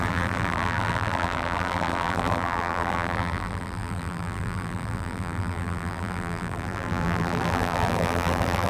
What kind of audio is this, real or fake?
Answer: fake